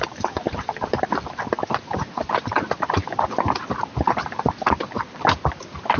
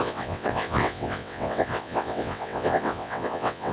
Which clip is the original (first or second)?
first